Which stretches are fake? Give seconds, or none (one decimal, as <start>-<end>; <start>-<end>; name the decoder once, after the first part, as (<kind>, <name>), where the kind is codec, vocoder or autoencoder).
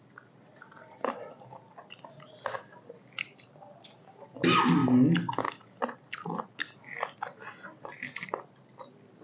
none